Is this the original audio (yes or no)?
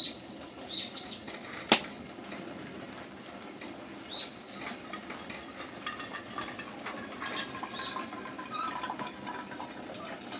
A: yes